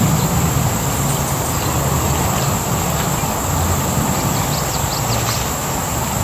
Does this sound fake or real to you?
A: real